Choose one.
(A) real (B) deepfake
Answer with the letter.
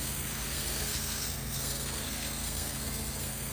B